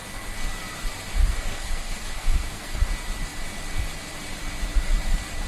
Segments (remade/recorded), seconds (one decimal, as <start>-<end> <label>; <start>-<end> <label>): 0.0-1.2 recorded; 1.2-2.8 remade; 2.8-5.5 recorded